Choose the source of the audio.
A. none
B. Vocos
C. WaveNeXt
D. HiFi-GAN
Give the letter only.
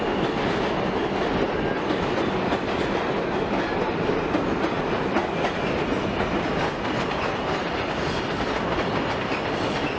A